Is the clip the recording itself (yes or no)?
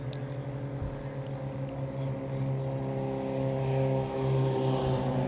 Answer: yes